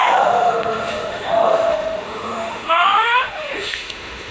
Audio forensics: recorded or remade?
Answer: remade